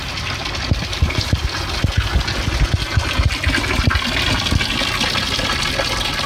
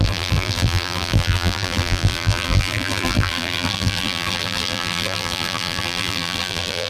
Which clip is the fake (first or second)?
second